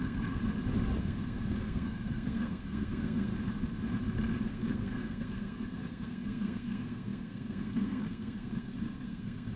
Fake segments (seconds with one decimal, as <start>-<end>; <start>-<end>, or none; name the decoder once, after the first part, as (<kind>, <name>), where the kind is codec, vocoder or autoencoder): 0.0-0.4 (codec, SNAC); 1.0-3.3; 4.5-9.6